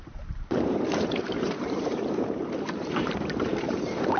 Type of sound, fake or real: fake